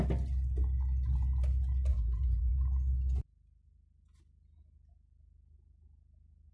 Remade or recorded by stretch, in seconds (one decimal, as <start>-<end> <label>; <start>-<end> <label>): 0.0-1.9 recorded; 1.9-2.5 remade; 2.5-6.5 recorded